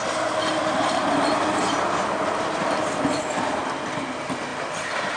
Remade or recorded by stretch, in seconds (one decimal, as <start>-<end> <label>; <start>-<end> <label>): 0.0-0.5 recorded; 0.5-3.6 remade; 3.6-4.5 recorded; 4.5-5.2 remade